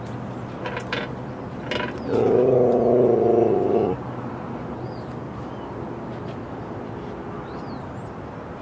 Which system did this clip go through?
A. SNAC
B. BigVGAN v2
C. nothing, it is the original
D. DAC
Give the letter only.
C